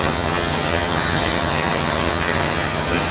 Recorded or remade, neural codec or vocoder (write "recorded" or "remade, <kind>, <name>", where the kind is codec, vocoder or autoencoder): remade, vocoder, HiFi-GAN